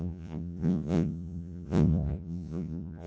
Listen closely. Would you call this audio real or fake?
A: fake